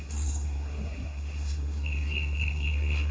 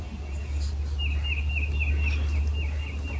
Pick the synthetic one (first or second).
first